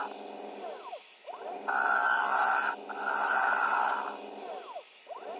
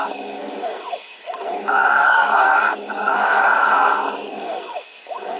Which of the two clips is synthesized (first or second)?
second